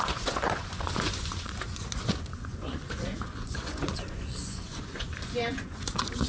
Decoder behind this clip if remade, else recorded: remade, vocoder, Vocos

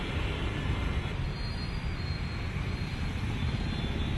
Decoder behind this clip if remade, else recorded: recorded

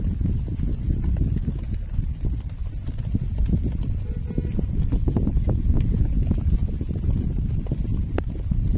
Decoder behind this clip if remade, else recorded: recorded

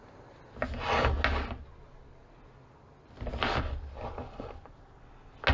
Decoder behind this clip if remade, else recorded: recorded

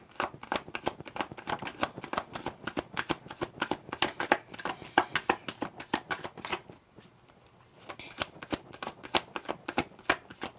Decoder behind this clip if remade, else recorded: recorded